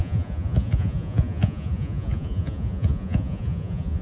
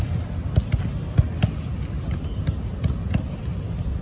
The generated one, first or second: first